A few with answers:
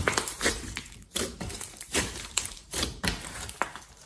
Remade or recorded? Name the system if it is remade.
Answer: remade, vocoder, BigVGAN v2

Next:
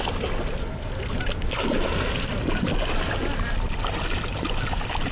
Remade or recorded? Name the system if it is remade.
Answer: recorded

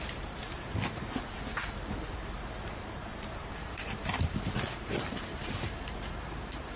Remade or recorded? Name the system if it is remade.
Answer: remade, vocoder, BigVGAN v2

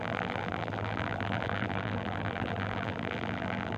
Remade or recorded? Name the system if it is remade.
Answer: remade, vocoder, BigVGAN v2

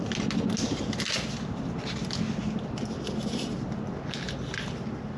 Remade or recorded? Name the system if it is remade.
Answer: recorded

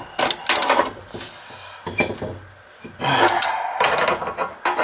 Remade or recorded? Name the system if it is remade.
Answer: recorded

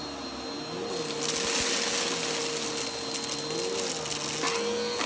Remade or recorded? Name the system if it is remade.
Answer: recorded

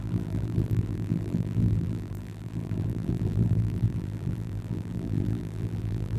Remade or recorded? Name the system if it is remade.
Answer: remade, vocoder, BigVGAN v2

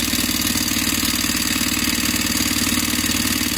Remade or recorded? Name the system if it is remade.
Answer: recorded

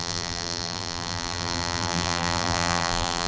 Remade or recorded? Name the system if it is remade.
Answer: remade, vocoder, BigVGAN v2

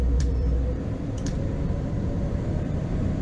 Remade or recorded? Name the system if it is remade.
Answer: remade, vocoder, BigVGAN v2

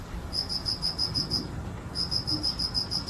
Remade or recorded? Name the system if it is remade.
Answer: recorded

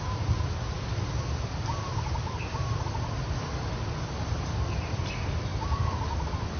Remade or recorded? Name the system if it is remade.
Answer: recorded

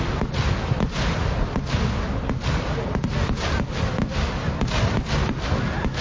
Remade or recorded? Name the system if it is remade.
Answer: recorded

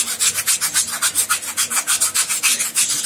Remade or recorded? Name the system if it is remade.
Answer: recorded